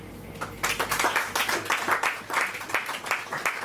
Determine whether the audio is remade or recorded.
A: recorded